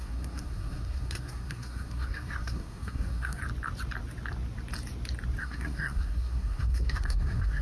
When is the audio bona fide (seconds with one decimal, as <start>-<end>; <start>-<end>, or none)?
3.4-5.4